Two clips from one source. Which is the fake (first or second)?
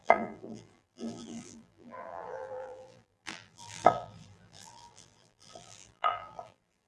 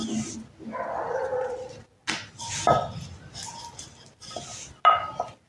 first